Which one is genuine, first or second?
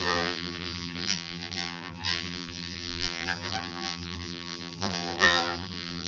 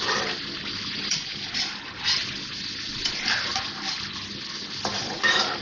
second